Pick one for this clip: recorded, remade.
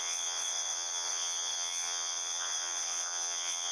remade